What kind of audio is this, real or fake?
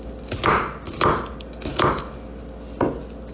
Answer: real